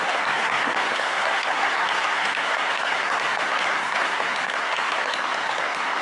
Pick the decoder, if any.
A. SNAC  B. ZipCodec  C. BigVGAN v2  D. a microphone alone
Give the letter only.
A